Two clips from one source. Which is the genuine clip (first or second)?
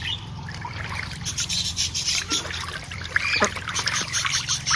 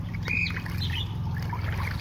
second